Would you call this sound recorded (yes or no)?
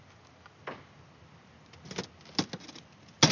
yes